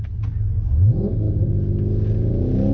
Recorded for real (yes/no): yes